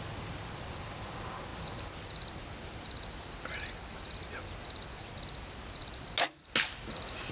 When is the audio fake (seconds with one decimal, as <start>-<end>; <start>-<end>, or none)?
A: none

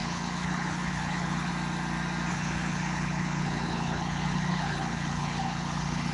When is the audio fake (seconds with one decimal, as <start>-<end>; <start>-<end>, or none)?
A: 0.0-1.5; 2.3-6.1

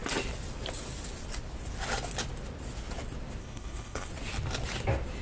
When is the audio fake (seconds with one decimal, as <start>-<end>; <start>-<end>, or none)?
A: 3.4-4.1

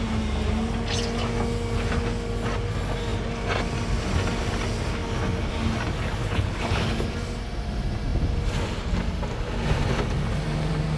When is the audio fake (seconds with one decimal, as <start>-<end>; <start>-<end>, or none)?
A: 6.2-6.8

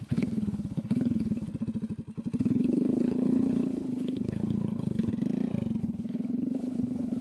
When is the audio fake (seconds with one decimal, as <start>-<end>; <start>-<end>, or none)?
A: 0.0-1.5; 2.4-5.1; 5.8-7.2

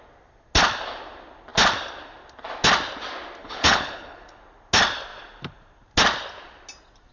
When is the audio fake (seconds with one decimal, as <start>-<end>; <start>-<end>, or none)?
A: 3.4-4.4

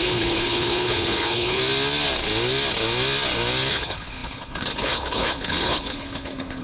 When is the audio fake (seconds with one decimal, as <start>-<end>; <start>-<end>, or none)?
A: 0.0-1.6; 3.7-6.6

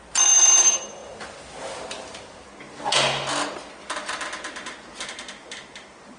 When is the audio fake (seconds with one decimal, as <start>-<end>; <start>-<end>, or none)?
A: none